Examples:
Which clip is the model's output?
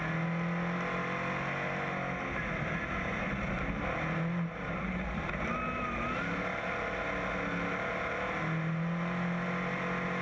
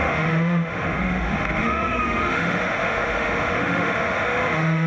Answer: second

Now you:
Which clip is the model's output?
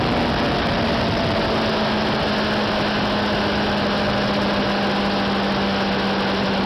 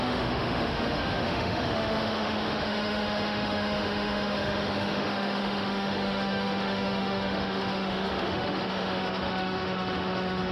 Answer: second